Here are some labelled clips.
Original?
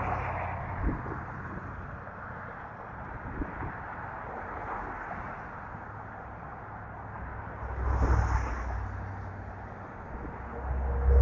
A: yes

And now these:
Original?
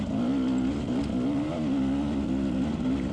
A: yes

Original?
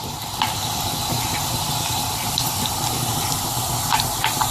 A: yes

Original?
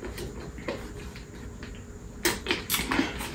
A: yes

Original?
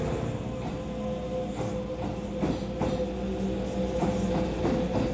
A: yes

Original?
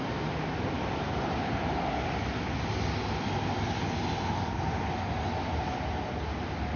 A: yes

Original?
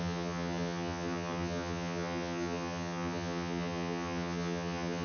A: no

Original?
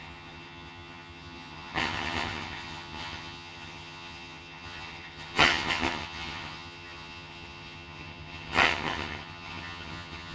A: no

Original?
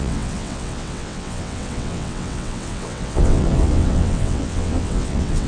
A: no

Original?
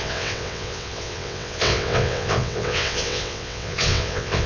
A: no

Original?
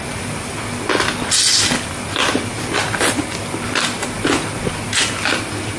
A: yes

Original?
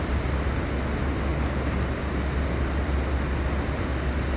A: yes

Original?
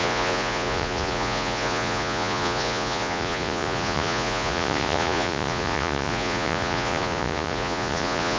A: no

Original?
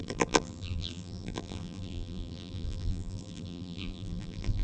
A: no